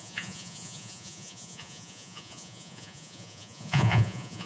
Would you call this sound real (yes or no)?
no